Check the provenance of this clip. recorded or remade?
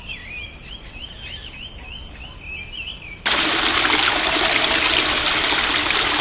recorded